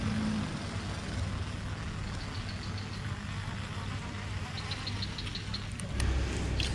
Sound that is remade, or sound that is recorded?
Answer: recorded